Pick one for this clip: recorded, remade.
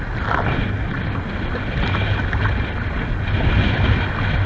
recorded